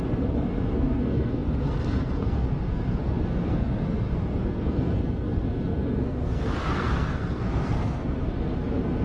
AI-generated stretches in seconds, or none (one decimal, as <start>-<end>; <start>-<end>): 0.0-9.0